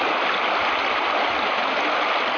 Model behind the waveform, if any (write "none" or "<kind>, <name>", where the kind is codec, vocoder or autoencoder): none